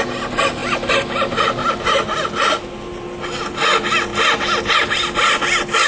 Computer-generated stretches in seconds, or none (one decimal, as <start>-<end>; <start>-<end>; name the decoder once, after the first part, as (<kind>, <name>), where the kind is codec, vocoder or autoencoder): none